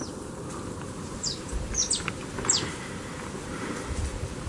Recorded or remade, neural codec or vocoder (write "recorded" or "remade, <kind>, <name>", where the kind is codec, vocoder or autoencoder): remade, vocoder, BigVGAN v2